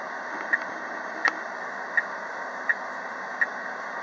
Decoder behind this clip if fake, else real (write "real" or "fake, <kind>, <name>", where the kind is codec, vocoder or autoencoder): real